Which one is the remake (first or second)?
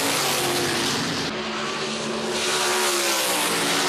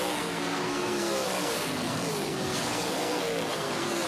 second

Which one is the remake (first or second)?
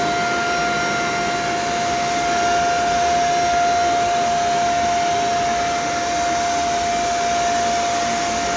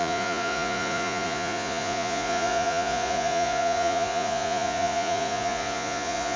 second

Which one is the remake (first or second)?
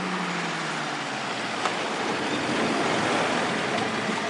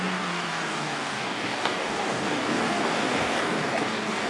second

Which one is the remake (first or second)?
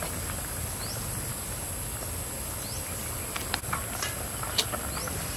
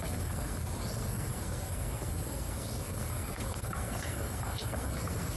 second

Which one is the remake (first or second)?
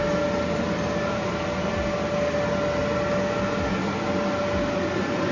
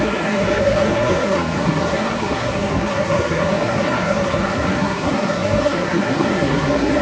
second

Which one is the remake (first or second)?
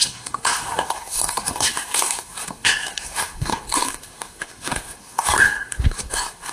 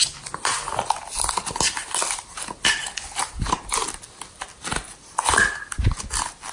first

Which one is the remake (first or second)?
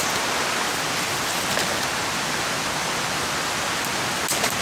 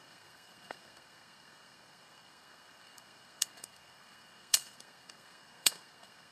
second